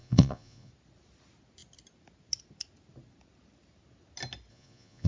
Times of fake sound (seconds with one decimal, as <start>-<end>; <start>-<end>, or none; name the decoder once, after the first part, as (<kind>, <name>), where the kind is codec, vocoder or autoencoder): 0.0-0.7 (vocoder, Vocos); 4.5-5.1